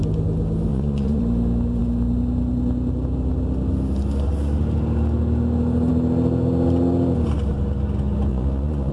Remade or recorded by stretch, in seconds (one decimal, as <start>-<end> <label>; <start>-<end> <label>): 0.0-0.7 recorded; 0.7-1.2 remade; 1.2-8.3 recorded; 8.3-8.9 remade